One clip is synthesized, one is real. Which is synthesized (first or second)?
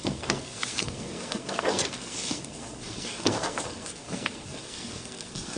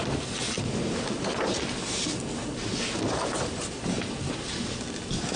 first